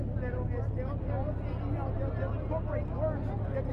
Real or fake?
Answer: real